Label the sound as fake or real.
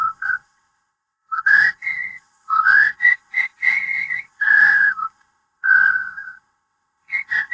fake